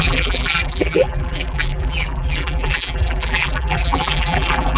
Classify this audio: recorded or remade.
remade